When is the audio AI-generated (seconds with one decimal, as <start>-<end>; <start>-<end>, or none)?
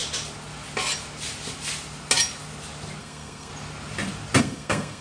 3.0-3.5; 4.4-5.0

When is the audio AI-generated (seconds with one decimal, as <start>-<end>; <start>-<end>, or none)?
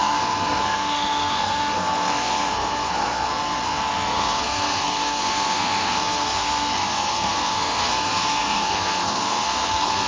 0.0-10.1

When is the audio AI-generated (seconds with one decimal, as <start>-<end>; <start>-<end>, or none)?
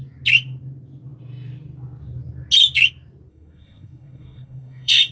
3.3-5.1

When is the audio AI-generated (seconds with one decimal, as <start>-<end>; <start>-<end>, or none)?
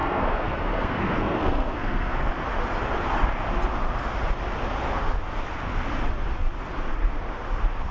0.0-2.3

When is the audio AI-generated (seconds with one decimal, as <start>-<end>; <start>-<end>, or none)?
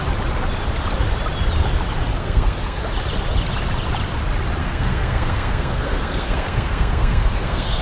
2.1-2.8; 4.6-7.8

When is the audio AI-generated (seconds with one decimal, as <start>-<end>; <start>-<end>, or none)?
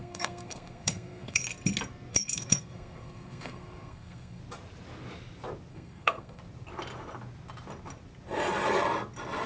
0.0-1.4; 2.1-4.4; 5.7-6.4